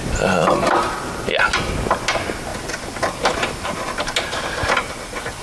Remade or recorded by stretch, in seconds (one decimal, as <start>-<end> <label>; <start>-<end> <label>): 0.0-5.4 recorded